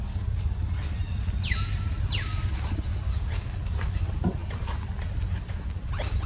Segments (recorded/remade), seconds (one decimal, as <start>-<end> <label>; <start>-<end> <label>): 0.0-6.3 recorded